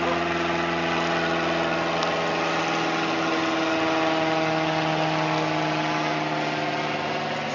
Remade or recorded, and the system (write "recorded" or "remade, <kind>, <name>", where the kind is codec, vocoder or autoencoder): recorded